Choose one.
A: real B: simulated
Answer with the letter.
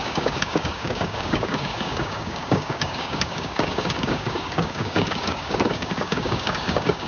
B